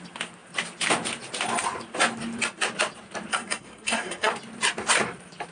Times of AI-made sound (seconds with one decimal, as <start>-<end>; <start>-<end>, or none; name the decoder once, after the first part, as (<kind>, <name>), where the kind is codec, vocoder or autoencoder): 3.3-4.3 (codec, SNAC)